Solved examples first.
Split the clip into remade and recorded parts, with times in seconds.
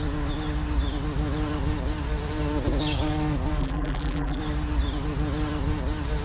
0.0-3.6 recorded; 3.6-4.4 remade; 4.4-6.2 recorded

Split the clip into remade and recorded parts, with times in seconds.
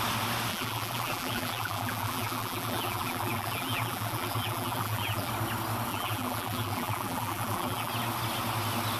0.0-0.5 recorded; 0.5-5.3 remade; 5.3-5.9 recorded; 5.9-7.9 remade; 7.9-9.0 recorded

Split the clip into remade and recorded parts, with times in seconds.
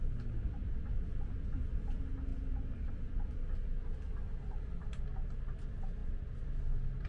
0.0-7.1 recorded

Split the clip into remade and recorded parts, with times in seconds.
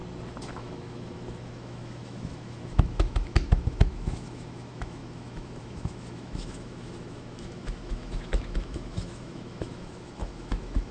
0.0-0.5 recorded; 0.5-10.9 remade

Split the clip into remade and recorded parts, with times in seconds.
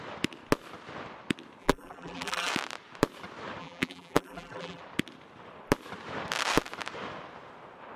0.0-1.6 recorded; 1.6-2.5 remade; 2.5-3.6 recorded; 3.6-4.8 remade; 4.8-8.0 recorded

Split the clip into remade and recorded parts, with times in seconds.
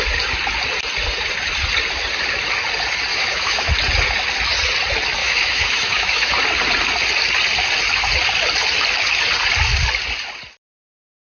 0.0-3.1 recorded; 3.1-3.7 remade; 3.7-5.2 recorded; 5.2-6.3 remade; 6.3-11.3 recorded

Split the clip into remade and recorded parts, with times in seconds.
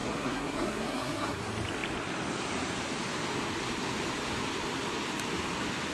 0.0-1.4 remade; 1.4-5.9 recorded